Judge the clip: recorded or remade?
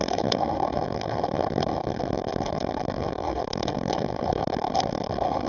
remade